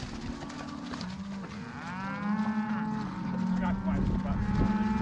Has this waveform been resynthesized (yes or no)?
no